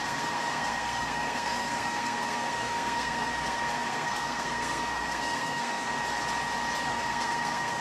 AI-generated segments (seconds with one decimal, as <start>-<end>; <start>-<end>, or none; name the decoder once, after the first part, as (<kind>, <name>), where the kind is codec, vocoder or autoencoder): 0.0-5.9 (codec, SNAC); 6.9-7.8